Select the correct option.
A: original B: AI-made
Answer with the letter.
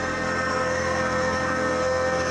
B